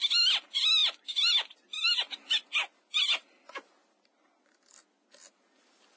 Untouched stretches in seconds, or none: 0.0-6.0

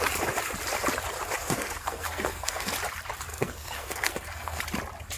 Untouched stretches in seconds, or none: 0.0-1.4; 2.7-3.3; 4.6-5.2

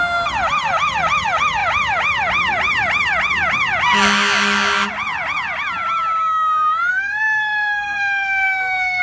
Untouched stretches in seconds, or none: 0.0-6.9